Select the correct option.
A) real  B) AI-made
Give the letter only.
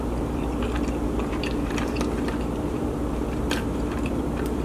B